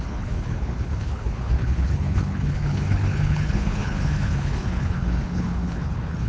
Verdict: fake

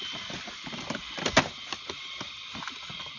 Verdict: real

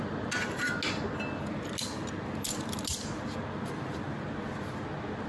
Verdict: real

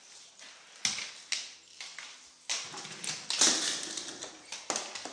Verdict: real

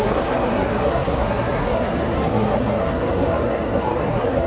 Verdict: fake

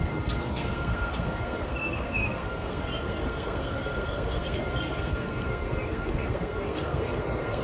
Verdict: fake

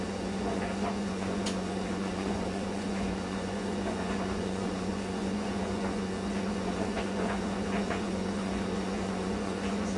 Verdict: fake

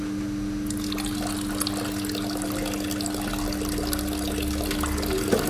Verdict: real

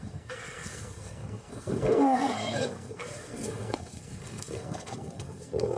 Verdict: fake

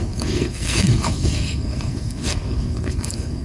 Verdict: fake